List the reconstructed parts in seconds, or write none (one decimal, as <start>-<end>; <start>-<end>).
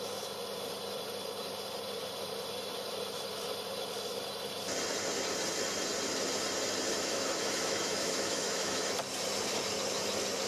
6.9-8.9